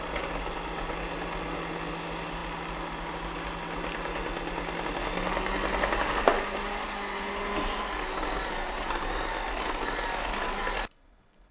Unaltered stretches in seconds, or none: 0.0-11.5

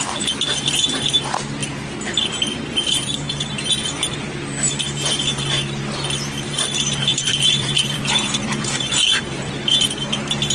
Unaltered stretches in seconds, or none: 0.0-1.6; 3.5-7.1; 9.8-10.5

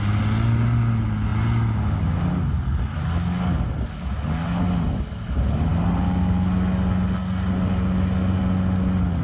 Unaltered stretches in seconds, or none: 0.0-9.2

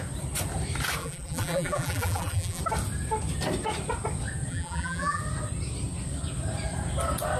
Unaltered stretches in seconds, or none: 0.0-1.0; 2.6-4.5; 5.2-7.4

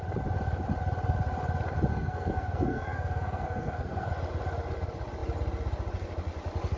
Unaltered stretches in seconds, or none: 0.0-1.9; 4.1-6.8